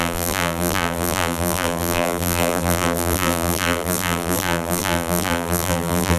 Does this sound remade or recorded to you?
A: remade